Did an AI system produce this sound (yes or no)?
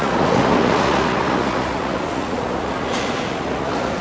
yes